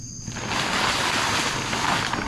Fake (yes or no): no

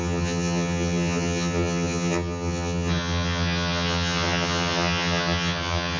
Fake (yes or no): yes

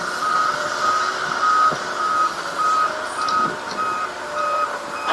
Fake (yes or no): yes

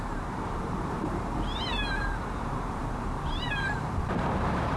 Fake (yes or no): yes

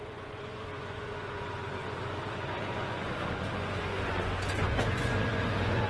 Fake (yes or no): yes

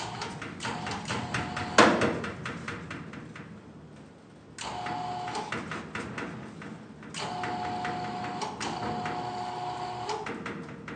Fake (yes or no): no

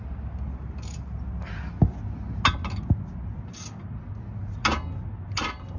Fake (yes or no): no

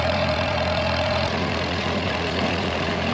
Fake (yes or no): yes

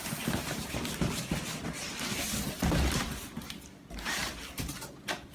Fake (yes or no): no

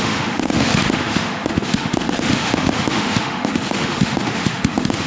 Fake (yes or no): yes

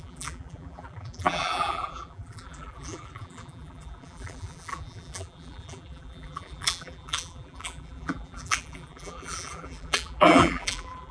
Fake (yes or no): yes